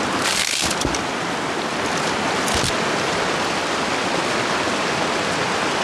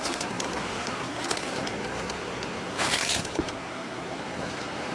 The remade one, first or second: second